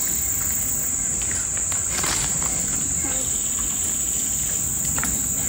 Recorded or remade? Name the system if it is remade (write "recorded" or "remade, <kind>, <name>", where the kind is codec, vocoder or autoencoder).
recorded